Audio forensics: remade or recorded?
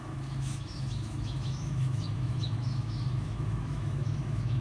remade